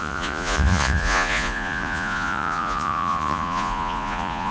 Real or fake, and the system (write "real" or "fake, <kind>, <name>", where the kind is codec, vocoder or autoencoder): fake, vocoder, Vocos